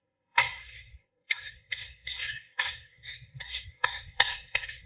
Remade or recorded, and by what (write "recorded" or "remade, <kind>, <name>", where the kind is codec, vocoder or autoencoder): remade, codec, SNAC